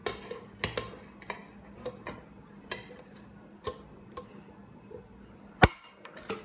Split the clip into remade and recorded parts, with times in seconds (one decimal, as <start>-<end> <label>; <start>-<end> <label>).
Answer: 0.0-6.4 recorded